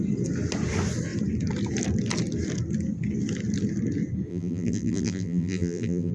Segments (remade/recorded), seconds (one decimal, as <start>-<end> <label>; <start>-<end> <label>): 0.0-4.3 recorded; 4.3-6.1 remade